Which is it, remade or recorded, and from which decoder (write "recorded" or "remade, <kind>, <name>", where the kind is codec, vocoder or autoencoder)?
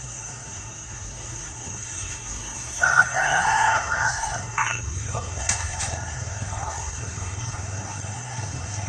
remade, codec, SNAC